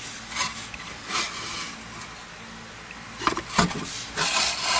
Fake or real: real